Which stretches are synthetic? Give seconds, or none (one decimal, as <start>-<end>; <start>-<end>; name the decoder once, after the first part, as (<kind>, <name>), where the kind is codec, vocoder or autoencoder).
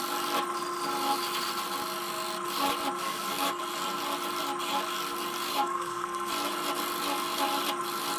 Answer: 3.0-3.6 (codec, SNAC); 5.5-6.3